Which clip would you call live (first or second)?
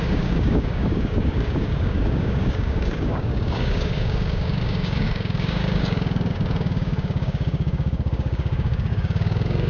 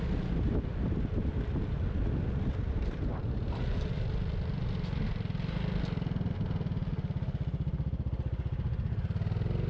second